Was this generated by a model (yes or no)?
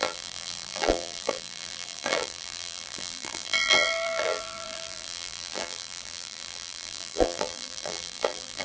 yes